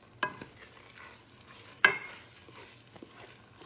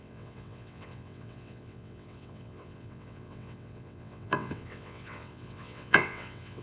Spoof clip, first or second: second